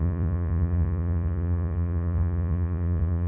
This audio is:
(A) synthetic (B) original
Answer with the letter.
A